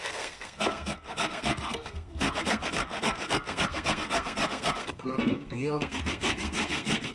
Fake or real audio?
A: fake